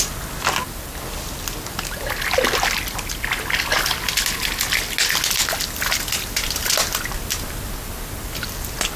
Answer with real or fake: real